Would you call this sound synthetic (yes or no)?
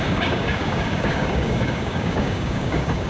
yes